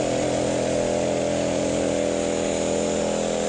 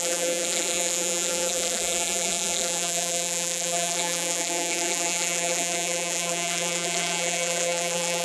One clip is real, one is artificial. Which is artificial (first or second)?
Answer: second